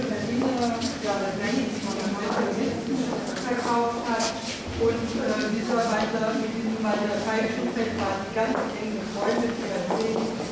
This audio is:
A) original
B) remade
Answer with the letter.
A